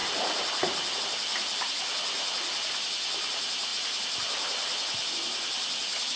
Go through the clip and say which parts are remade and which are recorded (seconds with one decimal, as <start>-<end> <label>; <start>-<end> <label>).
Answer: 0.0-6.2 recorded